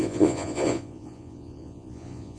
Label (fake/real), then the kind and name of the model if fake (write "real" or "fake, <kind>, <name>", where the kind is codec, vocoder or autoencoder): fake, vocoder, Vocos